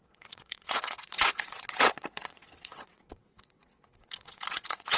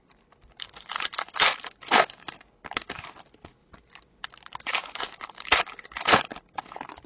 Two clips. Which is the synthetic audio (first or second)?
first